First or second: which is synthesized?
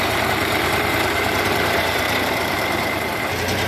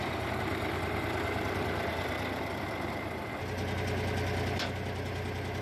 first